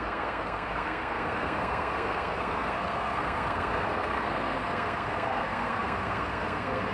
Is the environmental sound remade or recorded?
remade